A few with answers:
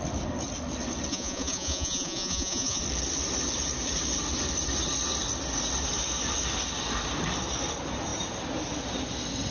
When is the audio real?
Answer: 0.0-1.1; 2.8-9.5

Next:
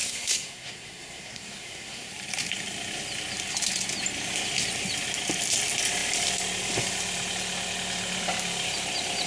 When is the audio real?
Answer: 2.1-9.3

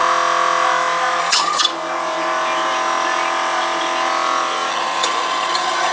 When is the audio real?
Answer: 0.0-1.2; 1.7-4.7